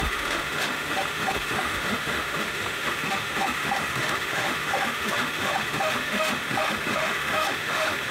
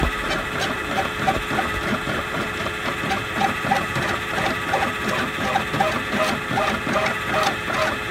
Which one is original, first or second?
second